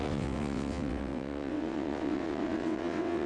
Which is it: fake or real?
fake